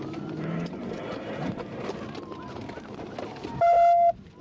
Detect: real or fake fake